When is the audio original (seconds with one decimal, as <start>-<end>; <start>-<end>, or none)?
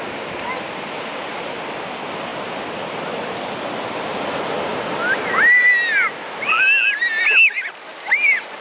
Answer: 0.0-8.6